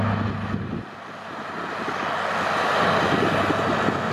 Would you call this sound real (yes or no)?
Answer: yes